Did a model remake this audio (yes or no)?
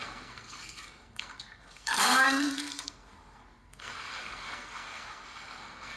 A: yes